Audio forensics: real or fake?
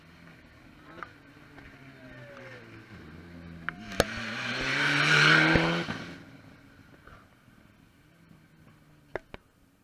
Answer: real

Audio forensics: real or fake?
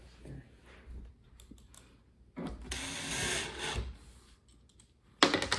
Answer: real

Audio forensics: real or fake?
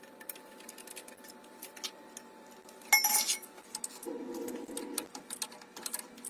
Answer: real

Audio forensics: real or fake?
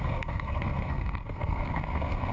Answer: fake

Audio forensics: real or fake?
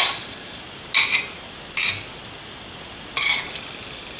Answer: real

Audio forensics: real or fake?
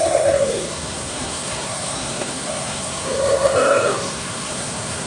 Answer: fake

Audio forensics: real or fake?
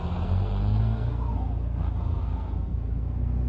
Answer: fake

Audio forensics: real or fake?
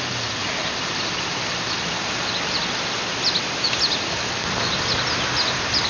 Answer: real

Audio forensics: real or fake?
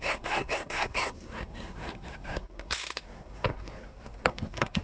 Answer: fake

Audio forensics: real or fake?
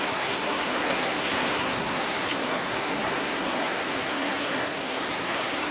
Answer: fake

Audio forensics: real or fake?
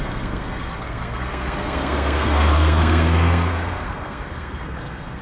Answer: fake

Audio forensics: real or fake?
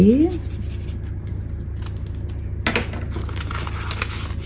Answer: real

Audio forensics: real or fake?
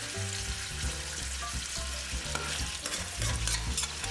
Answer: real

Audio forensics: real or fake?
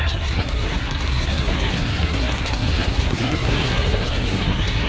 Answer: fake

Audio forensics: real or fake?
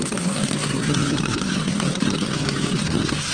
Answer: fake